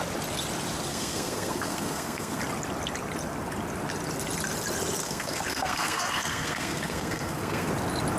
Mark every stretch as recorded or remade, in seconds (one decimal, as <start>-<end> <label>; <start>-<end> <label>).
0.0-0.9 recorded; 0.9-2.4 remade; 2.4-5.0 recorded; 5.0-7.7 remade; 7.7-8.2 recorded

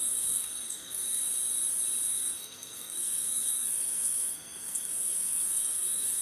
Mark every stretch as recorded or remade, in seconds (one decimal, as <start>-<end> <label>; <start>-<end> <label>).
0.0-1.3 remade; 1.3-2.1 recorded; 2.1-6.2 remade

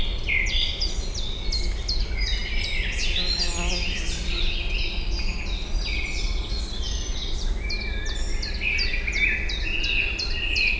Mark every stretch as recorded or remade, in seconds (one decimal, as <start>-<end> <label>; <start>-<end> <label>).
0.0-10.8 recorded

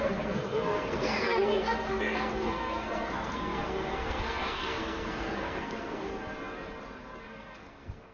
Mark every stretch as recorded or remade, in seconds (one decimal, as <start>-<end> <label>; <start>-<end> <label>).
0.0-6.1 remade; 6.1-7.2 recorded; 7.2-8.1 remade

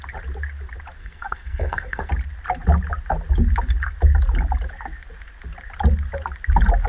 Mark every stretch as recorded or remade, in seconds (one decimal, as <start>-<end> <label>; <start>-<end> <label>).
0.0-1.0 recorded; 1.0-2.1 remade; 2.1-6.9 recorded

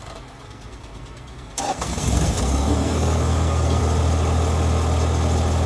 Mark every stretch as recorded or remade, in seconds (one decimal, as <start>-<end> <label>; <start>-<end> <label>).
0.0-3.8 remade; 3.8-5.7 recorded

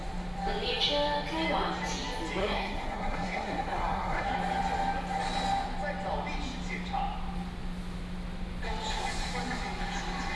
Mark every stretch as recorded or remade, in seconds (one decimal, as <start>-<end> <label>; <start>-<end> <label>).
0.0-2.4 recorded; 2.4-4.3 remade; 4.3-10.4 recorded